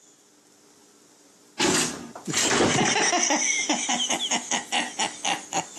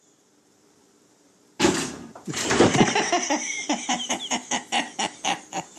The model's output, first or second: second